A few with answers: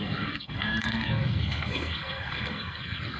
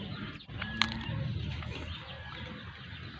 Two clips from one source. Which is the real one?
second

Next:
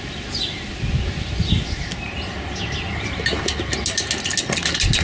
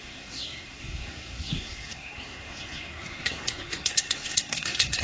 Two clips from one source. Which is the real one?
first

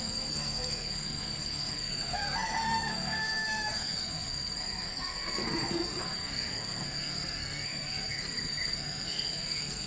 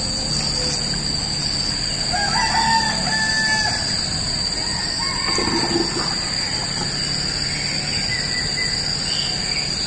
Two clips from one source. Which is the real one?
second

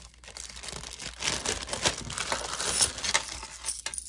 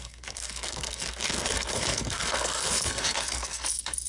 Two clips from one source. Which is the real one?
first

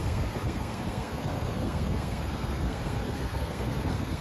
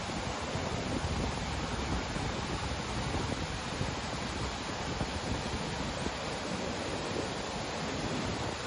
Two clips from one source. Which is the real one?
second